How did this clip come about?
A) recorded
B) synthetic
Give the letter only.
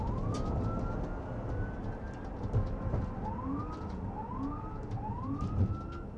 A